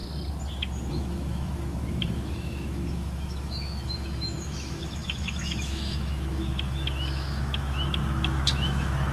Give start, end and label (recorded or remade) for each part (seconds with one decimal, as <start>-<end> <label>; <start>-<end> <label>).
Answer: 0.0-0.9 recorded; 0.9-9.1 remade